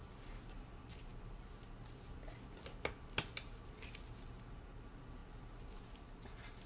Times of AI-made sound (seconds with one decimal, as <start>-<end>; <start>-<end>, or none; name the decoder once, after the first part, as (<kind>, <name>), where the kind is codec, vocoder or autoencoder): none